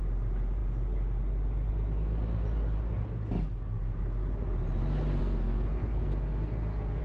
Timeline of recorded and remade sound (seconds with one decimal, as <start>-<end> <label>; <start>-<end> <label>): 0.0-5.2 recorded; 5.2-7.0 remade